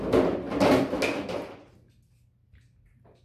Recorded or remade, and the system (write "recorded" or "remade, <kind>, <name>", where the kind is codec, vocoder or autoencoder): recorded